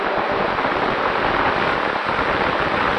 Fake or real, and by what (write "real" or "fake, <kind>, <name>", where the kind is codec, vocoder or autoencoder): real